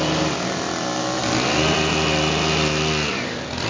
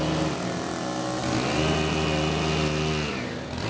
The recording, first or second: second